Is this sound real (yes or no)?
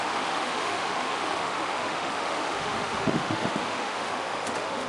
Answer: no